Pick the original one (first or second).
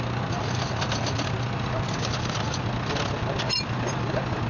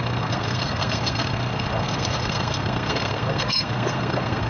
first